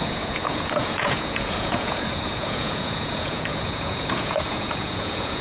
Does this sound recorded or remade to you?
remade